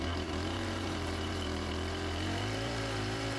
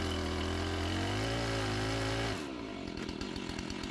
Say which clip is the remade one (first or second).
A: first